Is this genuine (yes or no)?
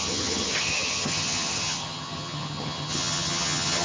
no